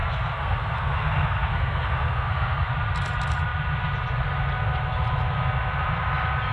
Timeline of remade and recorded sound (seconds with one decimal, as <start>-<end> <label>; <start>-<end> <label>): 0.0-2.7 remade; 2.7-6.5 recorded